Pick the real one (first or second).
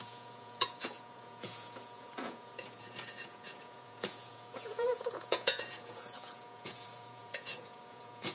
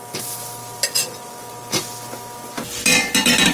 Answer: second